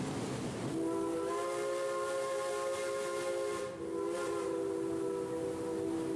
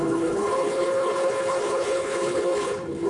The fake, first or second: second